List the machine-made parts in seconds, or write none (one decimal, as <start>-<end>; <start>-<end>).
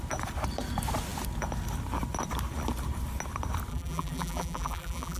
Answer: 3.7-5.2